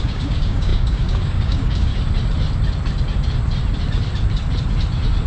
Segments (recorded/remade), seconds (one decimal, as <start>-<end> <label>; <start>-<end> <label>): 0.0-1.9 remade; 1.9-5.3 recorded